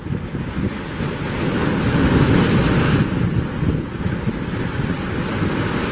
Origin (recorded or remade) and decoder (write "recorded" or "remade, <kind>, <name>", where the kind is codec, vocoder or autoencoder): recorded